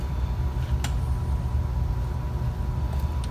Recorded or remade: recorded